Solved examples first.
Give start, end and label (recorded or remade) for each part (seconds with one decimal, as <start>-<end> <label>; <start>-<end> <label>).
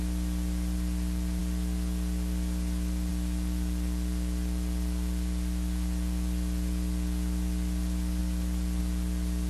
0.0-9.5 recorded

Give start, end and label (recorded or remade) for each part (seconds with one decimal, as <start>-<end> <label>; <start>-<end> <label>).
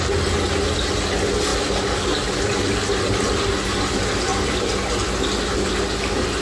0.0-6.4 recorded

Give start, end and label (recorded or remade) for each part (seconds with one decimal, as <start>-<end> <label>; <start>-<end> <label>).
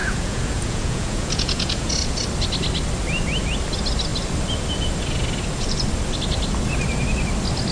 0.0-1.9 remade; 1.9-7.7 recorded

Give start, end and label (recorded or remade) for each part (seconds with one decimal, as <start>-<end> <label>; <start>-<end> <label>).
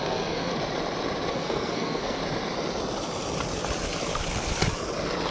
0.0-0.5 remade; 0.5-1.3 recorded; 1.3-2.2 remade; 2.2-5.3 recorded